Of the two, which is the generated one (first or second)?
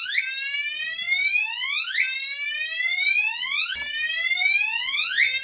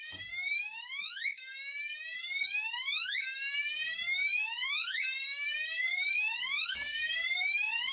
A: second